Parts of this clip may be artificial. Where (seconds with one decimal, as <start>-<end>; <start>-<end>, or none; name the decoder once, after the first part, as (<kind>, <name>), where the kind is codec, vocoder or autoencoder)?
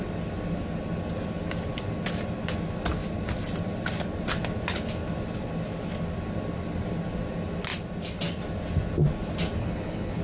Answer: 9.6-10.2 (codec, HILCodec)